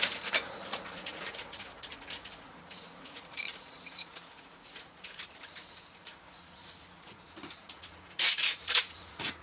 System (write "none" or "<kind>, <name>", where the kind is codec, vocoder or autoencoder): vocoder, Vocos